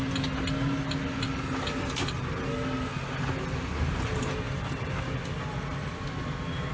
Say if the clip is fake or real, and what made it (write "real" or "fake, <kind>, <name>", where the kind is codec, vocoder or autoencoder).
real